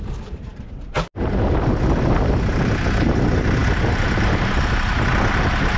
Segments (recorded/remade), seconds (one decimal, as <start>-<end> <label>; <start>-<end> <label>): 0.0-5.8 recorded